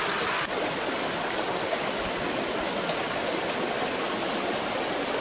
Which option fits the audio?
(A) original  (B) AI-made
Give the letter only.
A